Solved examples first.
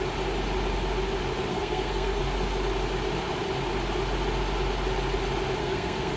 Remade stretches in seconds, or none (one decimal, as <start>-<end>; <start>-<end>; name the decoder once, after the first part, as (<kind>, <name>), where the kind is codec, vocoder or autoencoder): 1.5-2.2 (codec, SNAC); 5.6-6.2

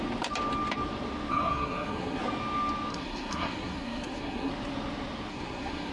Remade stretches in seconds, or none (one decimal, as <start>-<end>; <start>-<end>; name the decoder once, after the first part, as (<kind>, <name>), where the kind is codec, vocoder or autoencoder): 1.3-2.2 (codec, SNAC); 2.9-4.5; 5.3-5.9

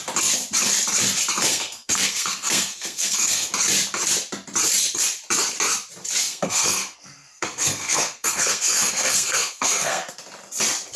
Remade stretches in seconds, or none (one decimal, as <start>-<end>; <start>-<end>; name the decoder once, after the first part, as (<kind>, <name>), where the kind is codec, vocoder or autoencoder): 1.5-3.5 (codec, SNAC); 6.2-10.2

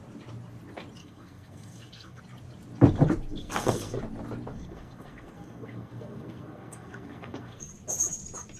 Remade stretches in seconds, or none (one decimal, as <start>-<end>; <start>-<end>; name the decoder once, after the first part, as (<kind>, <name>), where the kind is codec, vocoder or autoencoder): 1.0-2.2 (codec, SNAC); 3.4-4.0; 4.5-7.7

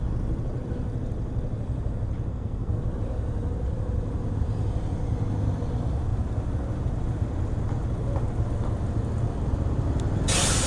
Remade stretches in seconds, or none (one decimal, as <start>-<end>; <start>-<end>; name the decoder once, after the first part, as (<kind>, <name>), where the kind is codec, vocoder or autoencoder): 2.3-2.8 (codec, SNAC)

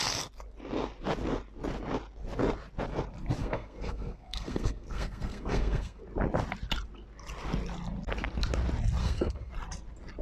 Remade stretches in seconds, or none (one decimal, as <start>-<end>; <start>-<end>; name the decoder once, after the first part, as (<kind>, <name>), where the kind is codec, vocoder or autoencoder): 3.4-6.0 (codec, SNAC); 9.0-9.5

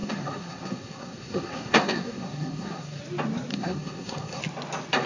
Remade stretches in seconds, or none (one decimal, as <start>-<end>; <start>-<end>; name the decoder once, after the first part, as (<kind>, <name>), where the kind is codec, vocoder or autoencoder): 0.0-3.0 (codec, SNAC); 3.5-4.4

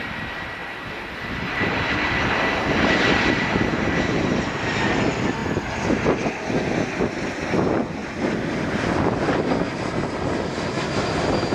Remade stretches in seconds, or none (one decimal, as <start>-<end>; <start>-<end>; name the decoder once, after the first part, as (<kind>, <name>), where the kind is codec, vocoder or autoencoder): none